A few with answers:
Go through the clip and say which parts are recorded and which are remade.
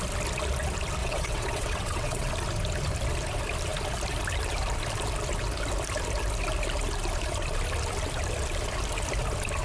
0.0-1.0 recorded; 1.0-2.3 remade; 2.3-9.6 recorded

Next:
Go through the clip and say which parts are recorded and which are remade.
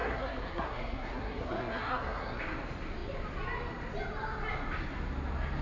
0.0-2.4 remade; 2.4-5.6 recorded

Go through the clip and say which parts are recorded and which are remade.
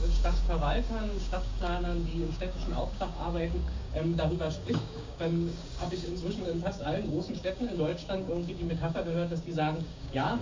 0.0-10.4 remade